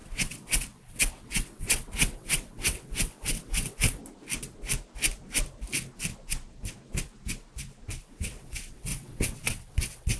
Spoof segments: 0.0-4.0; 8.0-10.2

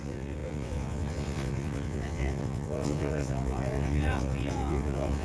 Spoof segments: 0.0-5.2

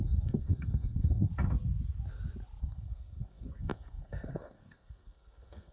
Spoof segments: 0.0-1.3; 2.6-5.7

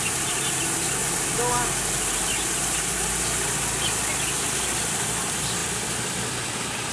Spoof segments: none

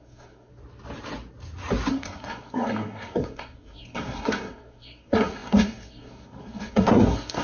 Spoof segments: 0.0-0.5; 1.9-7.4